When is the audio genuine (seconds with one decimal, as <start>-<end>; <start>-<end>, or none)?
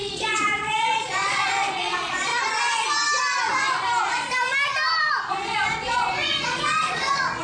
2.3-5.3